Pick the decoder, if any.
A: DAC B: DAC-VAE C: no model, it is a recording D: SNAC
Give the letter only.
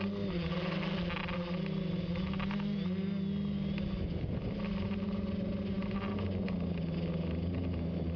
C